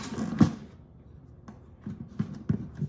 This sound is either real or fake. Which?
real